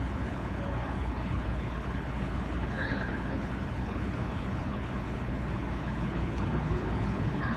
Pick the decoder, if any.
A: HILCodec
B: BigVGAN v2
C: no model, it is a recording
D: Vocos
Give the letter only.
A